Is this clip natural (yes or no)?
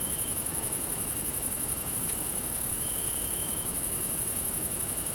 no